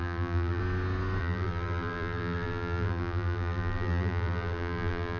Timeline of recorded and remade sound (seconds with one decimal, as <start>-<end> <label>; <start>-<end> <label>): 0.0-0.6 remade; 0.6-1.2 recorded; 1.2-5.2 remade